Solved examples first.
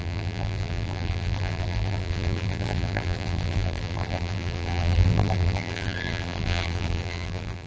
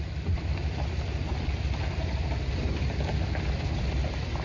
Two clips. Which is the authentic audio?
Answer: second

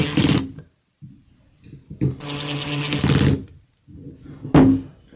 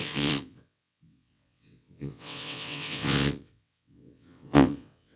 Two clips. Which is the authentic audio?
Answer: first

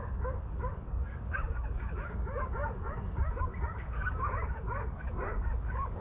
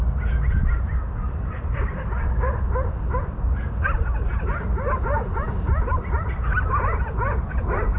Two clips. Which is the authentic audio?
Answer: second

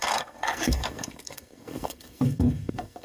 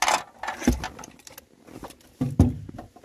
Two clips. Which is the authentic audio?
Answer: second